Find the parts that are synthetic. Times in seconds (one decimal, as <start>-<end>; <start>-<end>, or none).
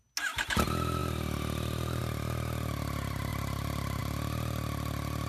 none